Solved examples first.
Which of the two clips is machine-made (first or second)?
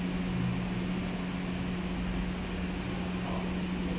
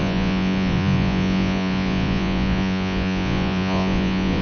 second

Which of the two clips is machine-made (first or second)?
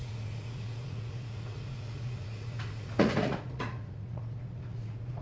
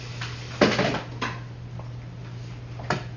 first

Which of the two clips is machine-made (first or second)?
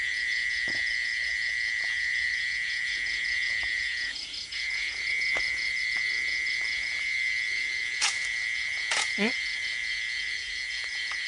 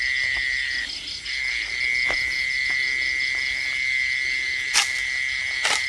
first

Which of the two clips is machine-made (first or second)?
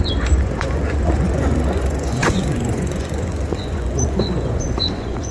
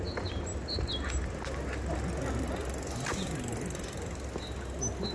first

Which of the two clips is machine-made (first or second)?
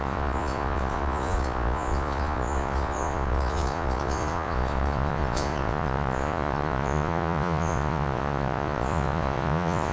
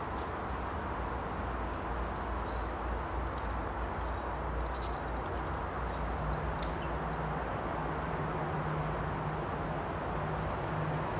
first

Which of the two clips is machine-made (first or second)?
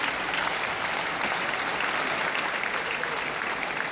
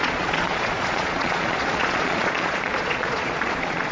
second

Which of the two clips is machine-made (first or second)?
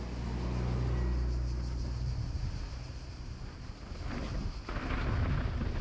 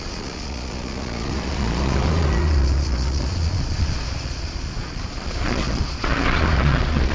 second